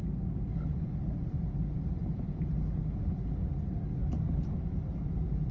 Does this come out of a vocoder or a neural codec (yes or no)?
no